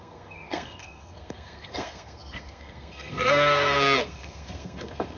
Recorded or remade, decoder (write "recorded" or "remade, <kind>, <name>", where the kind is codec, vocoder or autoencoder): remade, codec, SNAC